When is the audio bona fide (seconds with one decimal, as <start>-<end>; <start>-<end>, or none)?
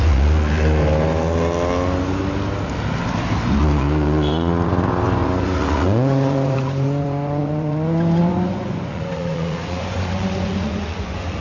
0.8-3.5